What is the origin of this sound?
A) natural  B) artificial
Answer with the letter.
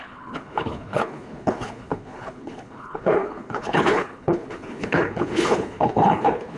B